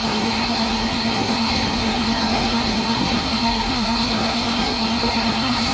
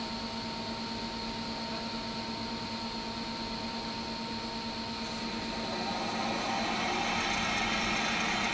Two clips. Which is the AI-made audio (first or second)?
first